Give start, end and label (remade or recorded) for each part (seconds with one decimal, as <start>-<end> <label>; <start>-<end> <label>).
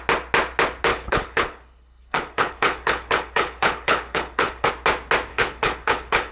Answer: 0.0-0.9 recorded; 0.9-4.7 remade; 4.7-5.3 recorded; 5.3-6.3 remade